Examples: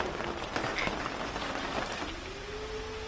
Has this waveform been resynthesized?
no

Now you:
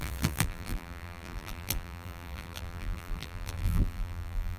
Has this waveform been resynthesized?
yes